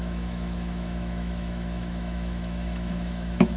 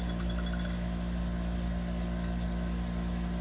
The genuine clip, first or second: second